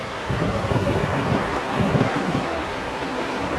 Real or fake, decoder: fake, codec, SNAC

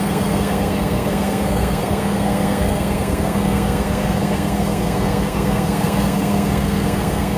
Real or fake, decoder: fake, codec, SNAC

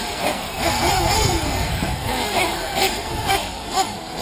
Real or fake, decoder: fake, codec, SNAC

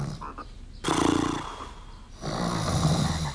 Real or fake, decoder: real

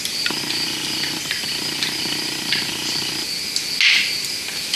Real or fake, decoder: real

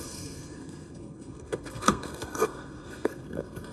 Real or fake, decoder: fake, codec, SNAC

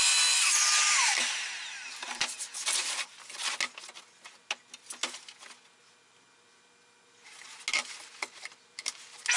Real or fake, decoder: real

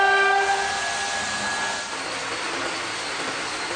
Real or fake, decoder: real